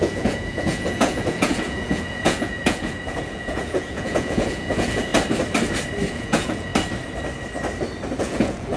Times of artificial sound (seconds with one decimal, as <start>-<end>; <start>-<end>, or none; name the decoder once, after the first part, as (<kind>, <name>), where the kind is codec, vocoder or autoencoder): 0.0-5.1 (vocoder, Vocos); 6.1-6.7; 8.2-8.8